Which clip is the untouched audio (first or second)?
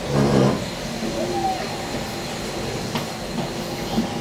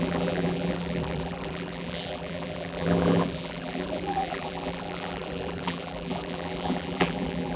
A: first